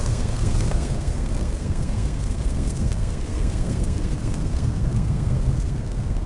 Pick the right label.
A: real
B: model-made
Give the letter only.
B